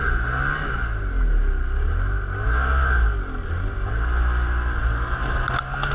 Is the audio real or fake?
real